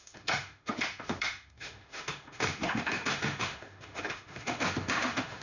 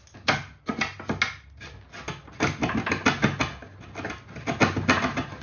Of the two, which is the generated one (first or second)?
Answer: first